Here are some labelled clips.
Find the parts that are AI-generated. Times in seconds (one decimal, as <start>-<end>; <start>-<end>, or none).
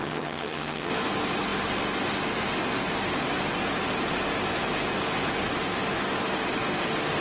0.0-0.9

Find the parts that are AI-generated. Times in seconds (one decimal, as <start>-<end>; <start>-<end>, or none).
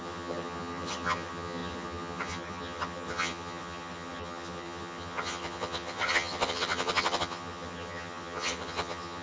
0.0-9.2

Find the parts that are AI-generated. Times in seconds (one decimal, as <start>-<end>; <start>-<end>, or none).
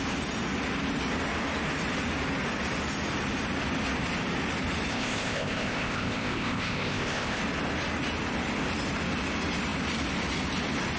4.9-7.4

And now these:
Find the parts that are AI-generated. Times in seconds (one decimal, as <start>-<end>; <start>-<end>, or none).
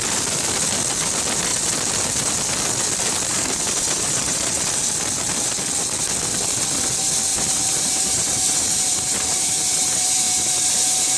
3.3-4.5; 7.3-11.2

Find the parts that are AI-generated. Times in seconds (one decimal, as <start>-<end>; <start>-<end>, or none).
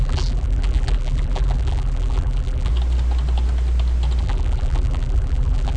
0.0-2.7; 4.2-5.8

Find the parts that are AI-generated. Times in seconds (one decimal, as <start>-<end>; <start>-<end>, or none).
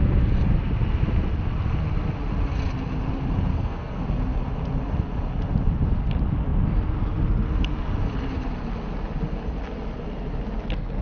3.5-4.0